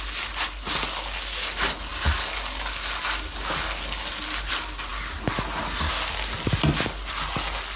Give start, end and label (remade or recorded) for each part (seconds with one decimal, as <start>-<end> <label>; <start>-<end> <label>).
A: 0.0-7.8 recorded